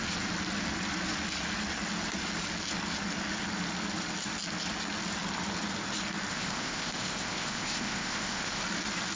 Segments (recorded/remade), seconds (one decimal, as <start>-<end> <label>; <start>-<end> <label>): 0.0-6.3 recorded; 6.3-8.6 remade; 8.6-9.2 recorded